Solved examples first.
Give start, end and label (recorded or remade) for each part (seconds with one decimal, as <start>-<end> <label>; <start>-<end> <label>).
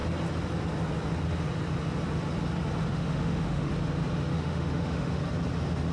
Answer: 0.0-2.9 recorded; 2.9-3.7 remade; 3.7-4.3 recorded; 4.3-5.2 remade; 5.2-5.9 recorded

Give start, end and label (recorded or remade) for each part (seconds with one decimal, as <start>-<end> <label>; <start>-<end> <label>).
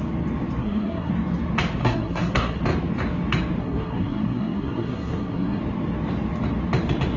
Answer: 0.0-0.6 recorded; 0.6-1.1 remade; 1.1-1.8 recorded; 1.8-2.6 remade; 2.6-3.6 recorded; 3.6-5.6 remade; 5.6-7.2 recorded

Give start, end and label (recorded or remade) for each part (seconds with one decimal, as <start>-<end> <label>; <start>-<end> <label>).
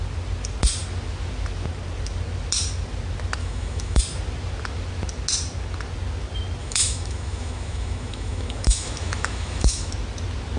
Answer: 0.0-3.4 recorded; 3.4-4.0 remade; 4.0-6.6 recorded; 6.6-9.9 remade; 9.9-10.6 recorded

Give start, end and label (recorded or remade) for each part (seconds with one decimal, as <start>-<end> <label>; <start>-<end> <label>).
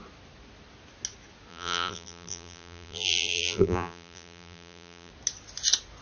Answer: 0.0-1.5 recorded; 1.5-5.1 remade; 5.1-6.0 recorded